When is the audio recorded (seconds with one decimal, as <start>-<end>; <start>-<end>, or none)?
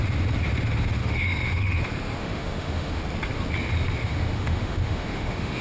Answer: 0.0-1.0; 1.8-2.2; 3.0-4.0